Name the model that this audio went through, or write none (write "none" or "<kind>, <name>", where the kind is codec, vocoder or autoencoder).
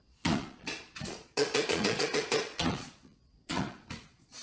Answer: vocoder, Vocos